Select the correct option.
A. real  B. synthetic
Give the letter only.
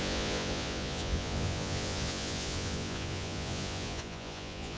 B